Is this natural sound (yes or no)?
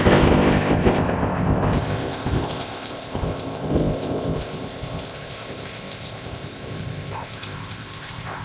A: no